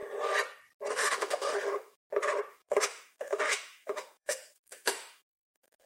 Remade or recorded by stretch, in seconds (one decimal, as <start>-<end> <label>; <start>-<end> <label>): 0.0-0.9 recorded; 0.9-2.0 remade; 2.0-2.5 recorded; 2.5-5.9 remade